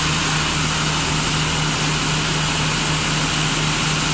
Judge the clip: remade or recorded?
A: recorded